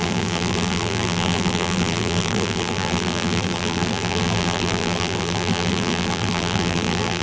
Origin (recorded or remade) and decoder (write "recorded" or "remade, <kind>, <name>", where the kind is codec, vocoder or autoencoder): remade, vocoder, BigVGAN v2